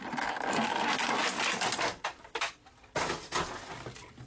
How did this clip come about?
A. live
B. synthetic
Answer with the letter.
A